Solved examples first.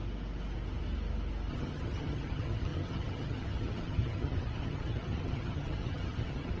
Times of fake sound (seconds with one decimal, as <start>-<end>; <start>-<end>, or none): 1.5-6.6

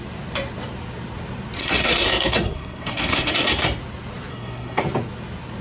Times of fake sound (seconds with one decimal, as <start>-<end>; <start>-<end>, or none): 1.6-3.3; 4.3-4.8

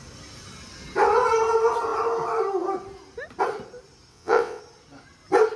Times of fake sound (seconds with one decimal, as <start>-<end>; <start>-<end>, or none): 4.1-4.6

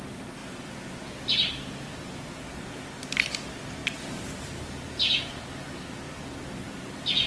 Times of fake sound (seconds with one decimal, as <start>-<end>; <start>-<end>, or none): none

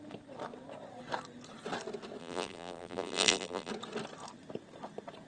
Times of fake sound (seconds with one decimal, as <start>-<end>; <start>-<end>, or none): 2.2-3.7

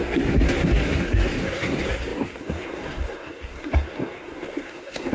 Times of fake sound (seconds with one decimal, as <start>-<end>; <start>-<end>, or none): 0.0-5.1